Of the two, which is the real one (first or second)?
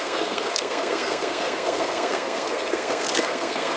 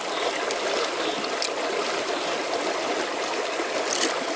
second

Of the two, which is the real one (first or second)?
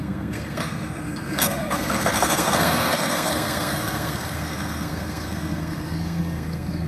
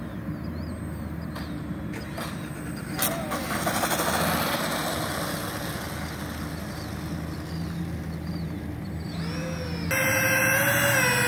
second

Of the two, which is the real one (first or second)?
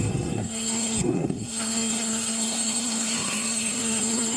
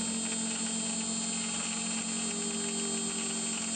second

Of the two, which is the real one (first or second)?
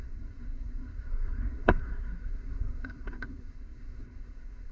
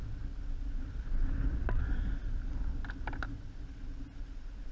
second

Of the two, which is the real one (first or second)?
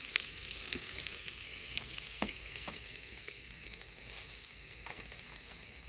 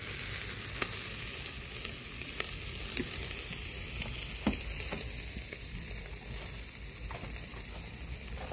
second